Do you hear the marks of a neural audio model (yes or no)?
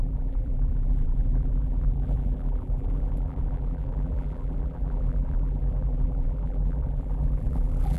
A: yes